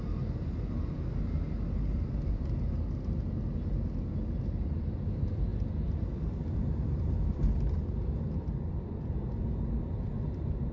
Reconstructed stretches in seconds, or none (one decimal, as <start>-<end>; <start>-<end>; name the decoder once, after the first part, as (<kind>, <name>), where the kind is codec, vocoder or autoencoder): 5.5-9.0 (vocoder, BigVGAN v2)